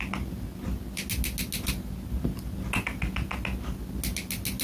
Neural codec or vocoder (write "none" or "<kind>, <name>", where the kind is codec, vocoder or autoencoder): none